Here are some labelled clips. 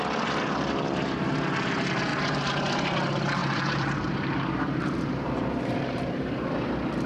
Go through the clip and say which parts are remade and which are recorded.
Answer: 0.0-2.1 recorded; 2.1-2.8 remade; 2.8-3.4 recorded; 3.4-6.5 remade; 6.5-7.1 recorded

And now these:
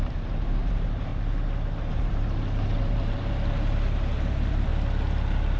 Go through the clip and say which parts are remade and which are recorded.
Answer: 0.0-1.1 remade; 1.1-1.9 recorded; 1.9-4.7 remade; 4.7-5.6 recorded

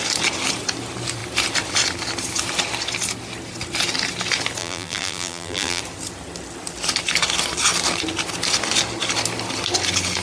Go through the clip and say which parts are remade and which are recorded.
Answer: 0.0-4.6 recorded; 4.6-5.8 remade; 5.8-10.2 recorded

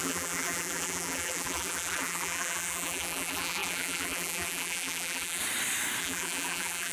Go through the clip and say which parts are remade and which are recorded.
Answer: 0.0-5.4 remade; 5.4-6.0 recorded; 6.0-6.9 remade

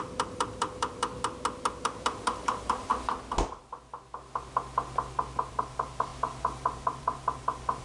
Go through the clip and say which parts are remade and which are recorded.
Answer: 0.0-1.1 remade; 1.1-1.7 recorded; 1.7-2.9 remade; 2.9-5.5 recorded; 5.5-7.8 remade